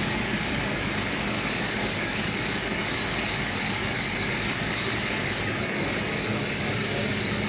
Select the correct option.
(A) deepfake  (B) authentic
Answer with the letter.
A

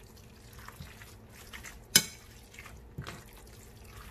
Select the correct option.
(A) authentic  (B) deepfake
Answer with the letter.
A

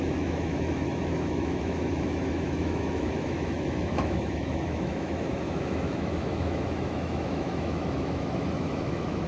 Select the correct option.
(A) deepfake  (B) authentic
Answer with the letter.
A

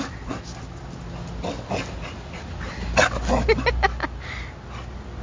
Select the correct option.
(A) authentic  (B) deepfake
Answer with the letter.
A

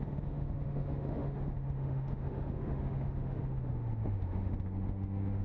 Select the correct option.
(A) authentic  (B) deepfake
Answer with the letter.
B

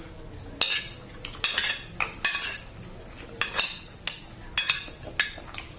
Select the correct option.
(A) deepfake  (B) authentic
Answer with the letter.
B